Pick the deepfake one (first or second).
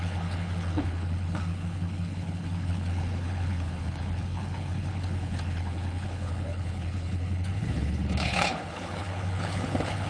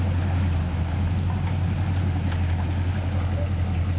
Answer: first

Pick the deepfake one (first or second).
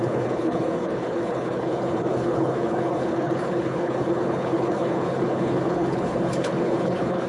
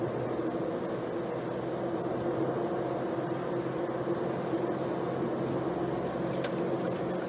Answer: first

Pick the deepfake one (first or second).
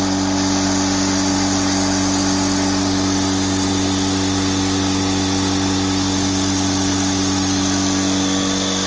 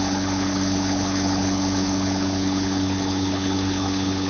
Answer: second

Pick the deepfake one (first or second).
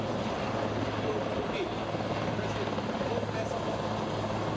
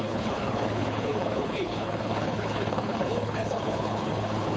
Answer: second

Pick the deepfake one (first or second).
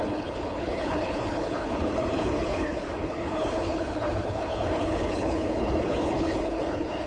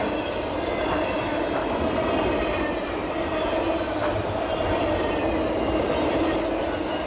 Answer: first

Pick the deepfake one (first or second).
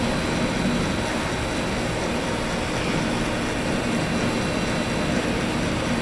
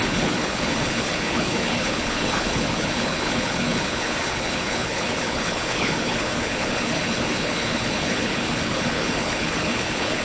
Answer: second